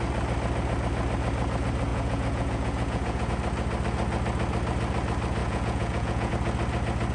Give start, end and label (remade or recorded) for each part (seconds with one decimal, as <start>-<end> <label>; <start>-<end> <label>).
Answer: 0.0-1.9 recorded; 1.9-3.3 remade; 3.3-5.4 recorded; 5.4-6.3 remade; 6.3-7.1 recorded